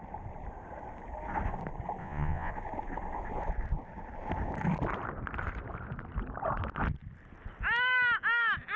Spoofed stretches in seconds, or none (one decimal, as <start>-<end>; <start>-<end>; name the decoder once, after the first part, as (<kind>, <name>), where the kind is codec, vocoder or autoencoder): 2.0-2.5 (vocoder, Vocos)